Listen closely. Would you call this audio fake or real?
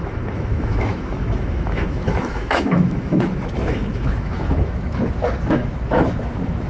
fake